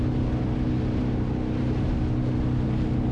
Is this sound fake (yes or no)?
no